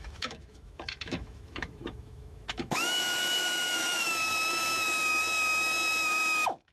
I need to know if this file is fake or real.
fake